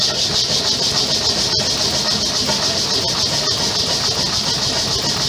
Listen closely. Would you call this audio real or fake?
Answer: real